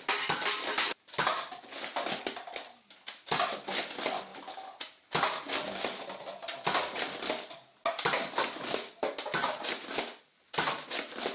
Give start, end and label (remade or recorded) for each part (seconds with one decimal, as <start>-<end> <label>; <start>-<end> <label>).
0.0-11.3 recorded